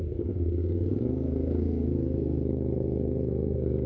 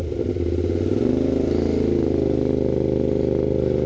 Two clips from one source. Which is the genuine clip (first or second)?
second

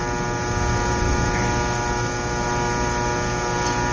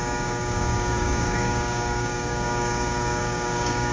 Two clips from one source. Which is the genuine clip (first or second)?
first